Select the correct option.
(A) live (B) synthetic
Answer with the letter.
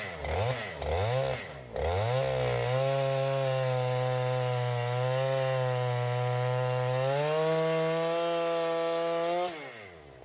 A